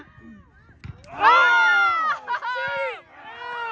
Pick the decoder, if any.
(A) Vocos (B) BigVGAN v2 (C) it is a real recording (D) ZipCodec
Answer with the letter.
C